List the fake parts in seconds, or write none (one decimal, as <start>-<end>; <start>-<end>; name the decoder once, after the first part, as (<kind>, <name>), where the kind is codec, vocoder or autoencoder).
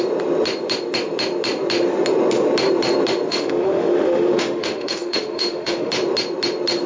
3.3-5.9 (autoencoder, DAC-VAE)